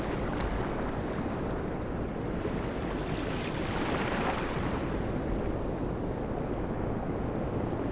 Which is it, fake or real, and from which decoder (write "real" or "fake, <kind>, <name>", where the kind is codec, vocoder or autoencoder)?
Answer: real